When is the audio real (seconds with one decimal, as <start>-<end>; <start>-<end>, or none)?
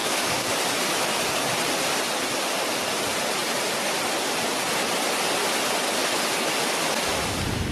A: 0.5-7.7